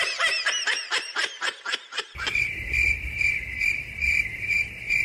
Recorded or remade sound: remade